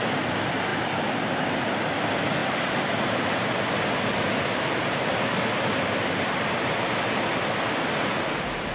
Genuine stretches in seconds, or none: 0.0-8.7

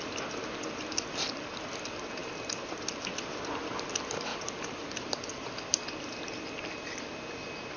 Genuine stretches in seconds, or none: 0.0-2.2; 3.9-4.3; 5.5-7.8

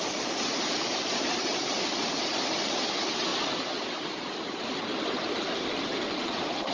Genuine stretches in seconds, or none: 3.3-6.1

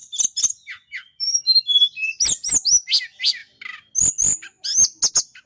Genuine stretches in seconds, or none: 0.0-5.5